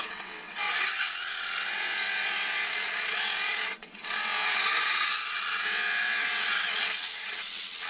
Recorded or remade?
remade